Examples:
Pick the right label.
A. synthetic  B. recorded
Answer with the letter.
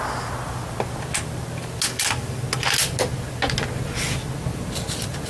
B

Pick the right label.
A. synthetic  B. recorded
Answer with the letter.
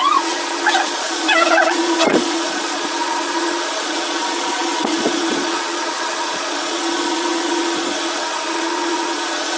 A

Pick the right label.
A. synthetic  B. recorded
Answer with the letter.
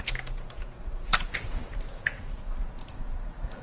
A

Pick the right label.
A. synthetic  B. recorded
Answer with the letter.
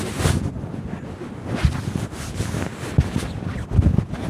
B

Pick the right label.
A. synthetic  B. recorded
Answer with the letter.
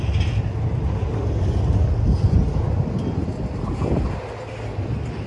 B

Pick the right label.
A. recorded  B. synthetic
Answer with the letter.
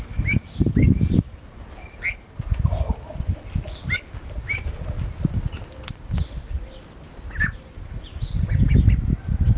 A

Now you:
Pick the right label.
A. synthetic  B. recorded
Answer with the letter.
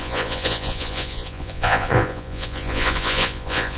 A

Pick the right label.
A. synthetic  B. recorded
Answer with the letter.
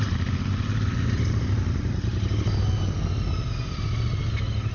B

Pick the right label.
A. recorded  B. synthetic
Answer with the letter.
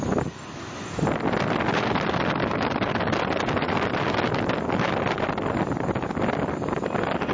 A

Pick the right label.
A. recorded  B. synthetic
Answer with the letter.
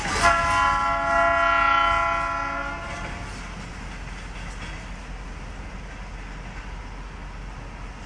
A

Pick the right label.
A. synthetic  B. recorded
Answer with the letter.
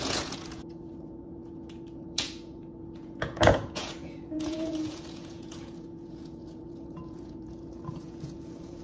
A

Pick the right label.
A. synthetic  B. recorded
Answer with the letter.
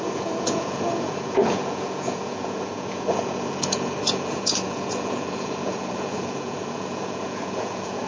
A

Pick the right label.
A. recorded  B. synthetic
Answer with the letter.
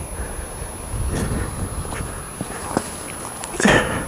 A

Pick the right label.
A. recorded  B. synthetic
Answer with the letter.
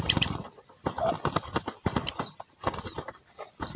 A